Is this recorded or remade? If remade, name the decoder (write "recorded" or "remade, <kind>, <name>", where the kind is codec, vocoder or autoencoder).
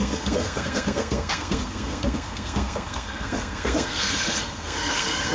remade, codec, SNAC